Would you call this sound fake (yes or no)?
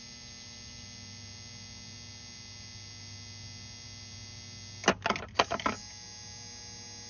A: no